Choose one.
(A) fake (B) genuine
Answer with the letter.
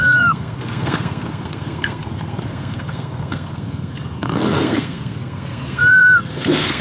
A